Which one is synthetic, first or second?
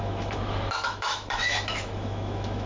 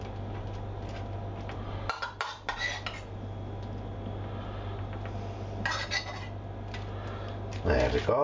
first